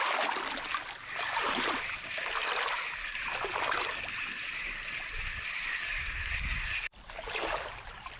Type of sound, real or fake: real